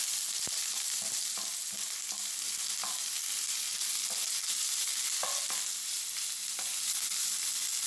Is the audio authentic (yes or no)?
yes